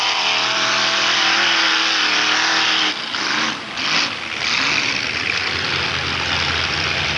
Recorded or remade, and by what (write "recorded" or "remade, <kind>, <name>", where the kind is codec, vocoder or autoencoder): recorded